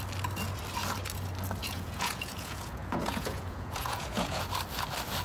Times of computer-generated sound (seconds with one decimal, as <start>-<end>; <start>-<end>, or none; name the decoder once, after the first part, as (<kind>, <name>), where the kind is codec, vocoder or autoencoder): 1.6-4.4 (vocoder, Vocos)